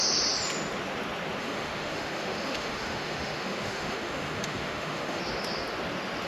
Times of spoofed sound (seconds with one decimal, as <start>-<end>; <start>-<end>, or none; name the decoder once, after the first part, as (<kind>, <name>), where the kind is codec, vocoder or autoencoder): 1.4-5.2 (autoencoder, DAC-VAE)